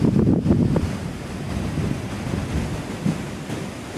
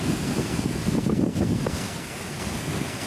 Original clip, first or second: first